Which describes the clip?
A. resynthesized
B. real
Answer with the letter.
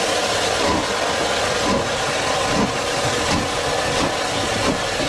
B